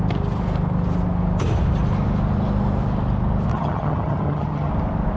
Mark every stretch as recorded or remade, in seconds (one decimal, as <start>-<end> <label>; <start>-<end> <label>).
0.0-3.5 recorded; 3.5-4.7 remade; 4.7-5.2 recorded